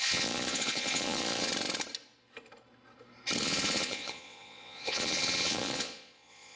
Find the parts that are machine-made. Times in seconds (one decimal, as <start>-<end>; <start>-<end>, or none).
0.0-1.5; 3.4-6.6